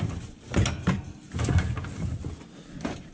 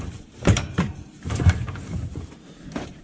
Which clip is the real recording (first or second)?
first